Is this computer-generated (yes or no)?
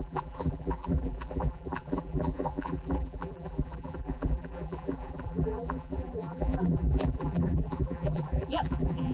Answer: yes